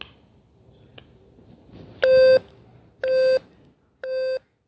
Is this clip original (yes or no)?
yes